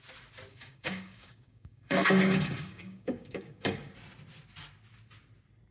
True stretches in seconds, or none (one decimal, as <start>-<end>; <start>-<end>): 0.0-0.5; 3.9-5.7